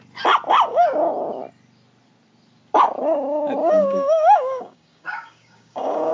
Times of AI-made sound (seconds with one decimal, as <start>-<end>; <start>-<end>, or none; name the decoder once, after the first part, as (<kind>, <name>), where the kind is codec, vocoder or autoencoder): 3.6-6.1 (codec, DAC)